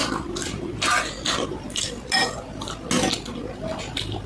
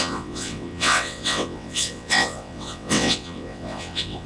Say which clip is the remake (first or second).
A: second